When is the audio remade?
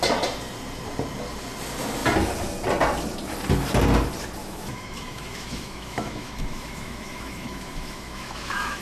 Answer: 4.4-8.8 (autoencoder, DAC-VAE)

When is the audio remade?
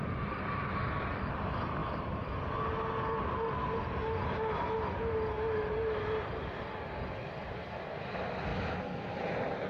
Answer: none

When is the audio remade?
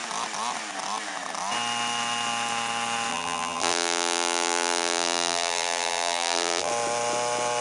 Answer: 3.1-6.7 (vocoder, BigVGAN v2)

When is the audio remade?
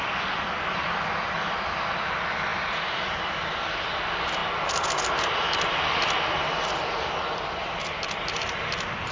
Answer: none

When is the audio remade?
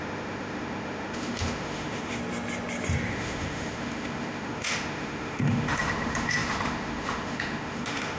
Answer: 0.0-2.2 (autoencoder, DAC-VAE); 3.1-8.2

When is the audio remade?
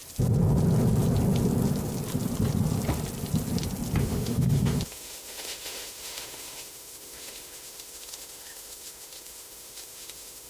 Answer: 4.0-10.5 (autoencoder, DAC-VAE)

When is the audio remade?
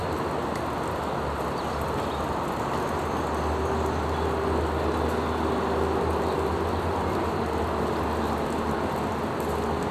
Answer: none